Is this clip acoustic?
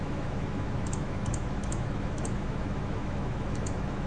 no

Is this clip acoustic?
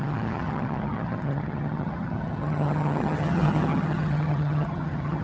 no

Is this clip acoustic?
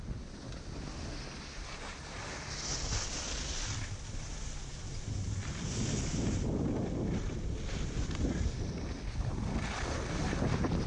yes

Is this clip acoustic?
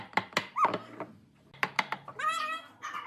yes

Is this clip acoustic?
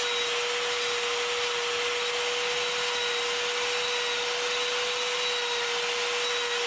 yes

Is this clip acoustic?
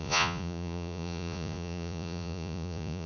no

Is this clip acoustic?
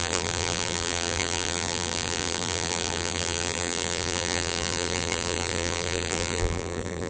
no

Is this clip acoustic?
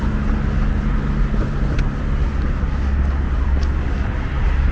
yes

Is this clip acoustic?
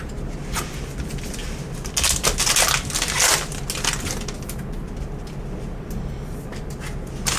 yes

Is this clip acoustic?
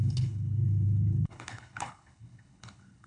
no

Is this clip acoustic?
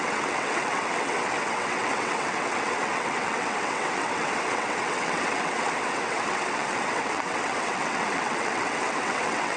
no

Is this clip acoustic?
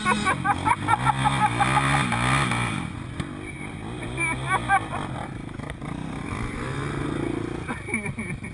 yes